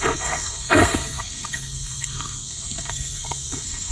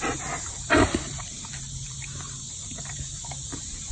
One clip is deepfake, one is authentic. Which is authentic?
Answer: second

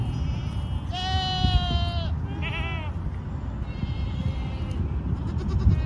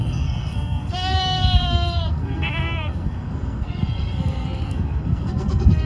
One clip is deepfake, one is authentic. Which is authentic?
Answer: first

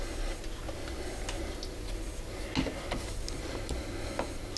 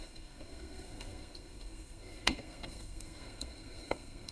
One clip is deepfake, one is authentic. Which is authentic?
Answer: first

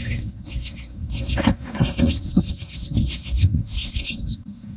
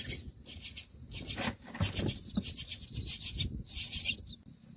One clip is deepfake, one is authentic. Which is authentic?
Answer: second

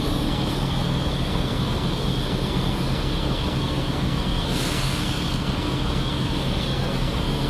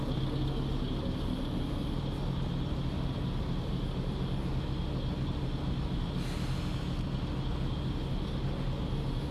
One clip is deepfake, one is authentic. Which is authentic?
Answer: second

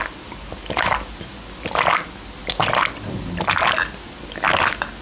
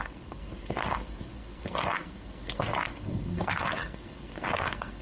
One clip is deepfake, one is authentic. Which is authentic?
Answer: first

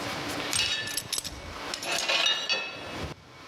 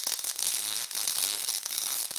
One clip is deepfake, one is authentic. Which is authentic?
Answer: first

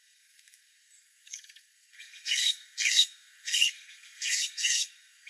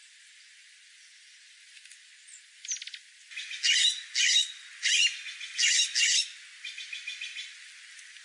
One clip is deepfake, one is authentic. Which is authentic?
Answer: second